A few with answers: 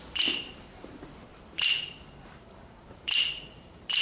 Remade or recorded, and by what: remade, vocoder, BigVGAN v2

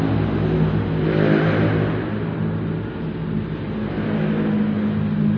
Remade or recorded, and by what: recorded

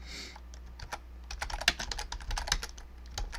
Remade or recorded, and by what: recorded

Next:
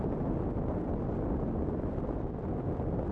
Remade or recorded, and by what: recorded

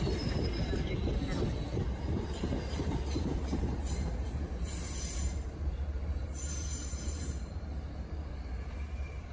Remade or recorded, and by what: remade, vocoder, BigVGAN v2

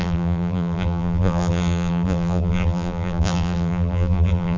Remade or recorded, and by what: remade, vocoder, BigVGAN v2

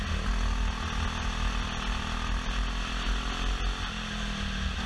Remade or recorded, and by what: recorded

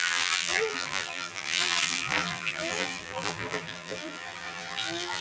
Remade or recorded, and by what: remade, vocoder, BigVGAN v2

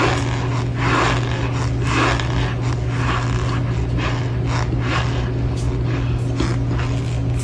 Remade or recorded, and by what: recorded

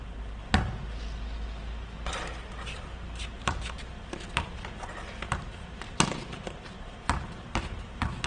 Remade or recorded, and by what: recorded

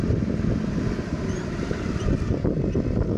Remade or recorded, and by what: remade, vocoder, BigVGAN v2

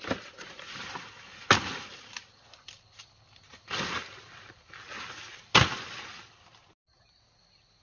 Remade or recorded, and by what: recorded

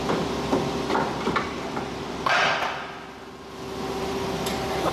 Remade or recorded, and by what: recorded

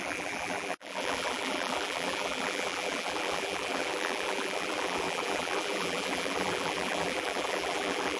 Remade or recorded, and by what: remade, vocoder, BigVGAN v2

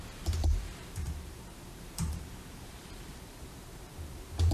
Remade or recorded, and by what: remade, vocoder, BigVGAN v2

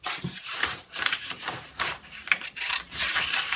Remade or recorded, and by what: remade, vocoder, BigVGAN v2